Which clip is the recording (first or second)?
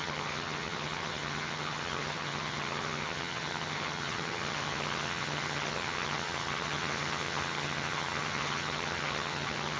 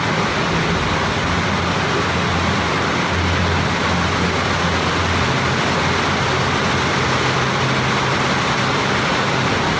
second